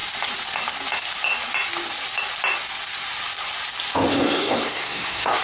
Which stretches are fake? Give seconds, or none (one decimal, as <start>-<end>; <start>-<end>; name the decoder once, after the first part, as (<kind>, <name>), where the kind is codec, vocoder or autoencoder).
4.1-5.4 (codec, SNAC)